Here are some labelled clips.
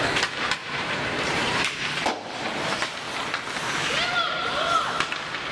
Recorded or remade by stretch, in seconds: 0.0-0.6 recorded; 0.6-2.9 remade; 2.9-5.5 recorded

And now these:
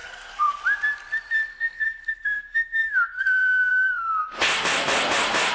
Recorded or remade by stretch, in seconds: 0.0-0.6 remade; 0.6-1.5 recorded; 1.5-3.2 remade; 3.2-3.7 recorded; 3.7-4.3 remade; 4.3-5.5 recorded

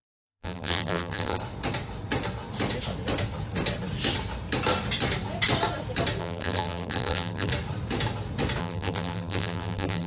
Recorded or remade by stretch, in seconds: 0.0-1.4 remade; 1.4-6.2 recorded; 6.2-7.5 remade; 7.5-8.6 recorded; 8.6-10.1 remade

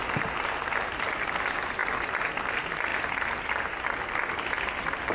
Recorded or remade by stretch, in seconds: 0.0-5.1 recorded

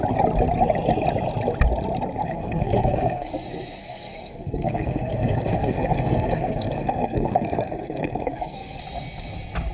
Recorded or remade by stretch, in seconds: 0.0-2.2 recorded; 2.2-3.3 remade; 3.3-3.8 recorded; 3.8-8.8 remade; 8.8-9.7 recorded

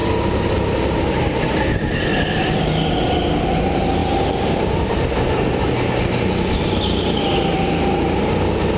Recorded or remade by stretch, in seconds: 0.0-8.8 recorded

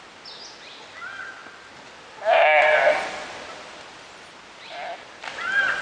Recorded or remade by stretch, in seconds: 0.0-5.8 recorded

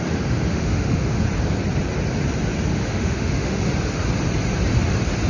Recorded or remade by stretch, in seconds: 0.0-0.5 recorded; 0.5-1.2 remade; 1.2-2.7 recorded; 2.7-3.6 remade; 3.6-5.3 recorded